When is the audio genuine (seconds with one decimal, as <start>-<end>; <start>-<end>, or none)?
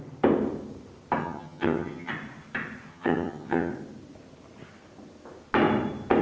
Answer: 0.0-1.2; 2.1-2.9; 3.7-6.2